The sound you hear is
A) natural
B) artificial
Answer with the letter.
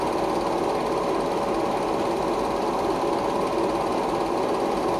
A